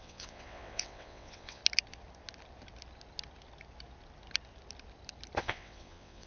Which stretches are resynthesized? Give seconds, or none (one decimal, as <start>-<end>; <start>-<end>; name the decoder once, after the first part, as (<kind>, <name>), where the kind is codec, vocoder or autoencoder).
0.0-1.6 (vocoder, WaveNeXt); 5.4-6.3